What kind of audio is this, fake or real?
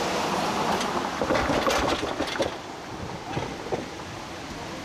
real